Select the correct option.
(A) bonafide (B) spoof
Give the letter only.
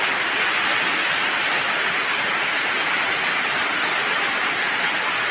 A